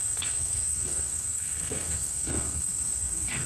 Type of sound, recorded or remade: remade